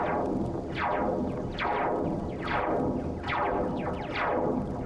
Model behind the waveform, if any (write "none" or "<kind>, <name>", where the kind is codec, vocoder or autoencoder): none